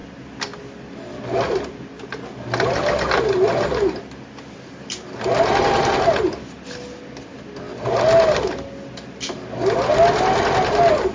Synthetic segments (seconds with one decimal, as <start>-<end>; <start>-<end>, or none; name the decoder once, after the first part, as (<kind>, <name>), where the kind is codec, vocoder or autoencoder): none